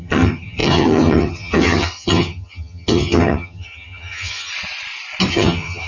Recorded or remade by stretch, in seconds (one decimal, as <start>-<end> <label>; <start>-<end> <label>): 0.0-4.5 remade; 4.5-5.3 recorded; 5.3-5.9 remade